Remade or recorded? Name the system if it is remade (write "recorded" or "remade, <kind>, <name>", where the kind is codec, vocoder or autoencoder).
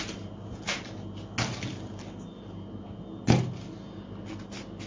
recorded